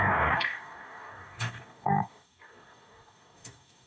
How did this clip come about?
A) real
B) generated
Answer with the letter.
B